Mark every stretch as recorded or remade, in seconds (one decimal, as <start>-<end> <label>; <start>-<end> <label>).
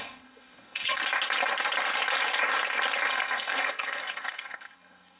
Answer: 0.0-1.0 remade; 1.0-3.1 recorded; 3.1-5.2 remade